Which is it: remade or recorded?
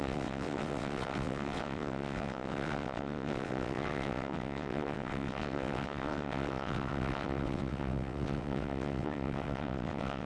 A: remade